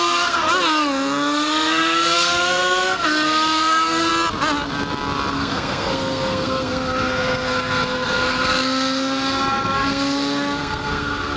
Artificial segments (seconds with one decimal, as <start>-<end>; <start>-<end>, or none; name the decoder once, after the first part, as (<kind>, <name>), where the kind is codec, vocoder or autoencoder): 0.0-4.1 (codec, SNAC); 5.3-11.4